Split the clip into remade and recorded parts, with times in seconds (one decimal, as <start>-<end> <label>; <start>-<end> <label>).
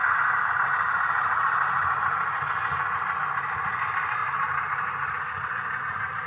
0.0-6.3 recorded